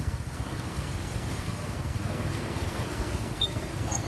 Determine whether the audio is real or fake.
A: fake